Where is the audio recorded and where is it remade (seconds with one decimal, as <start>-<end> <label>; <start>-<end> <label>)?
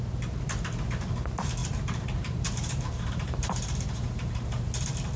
0.0-1.6 recorded; 1.6-4.7 remade; 4.7-5.2 recorded